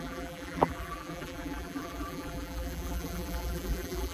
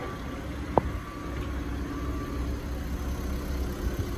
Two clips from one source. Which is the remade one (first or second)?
first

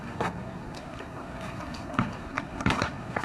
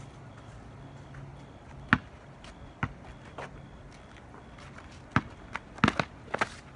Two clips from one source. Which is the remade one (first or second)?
first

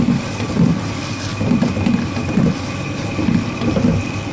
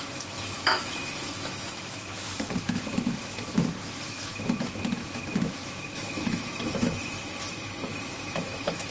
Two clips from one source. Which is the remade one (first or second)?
second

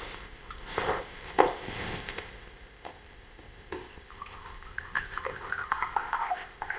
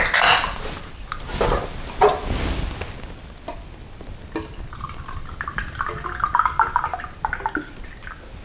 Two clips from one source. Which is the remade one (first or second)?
first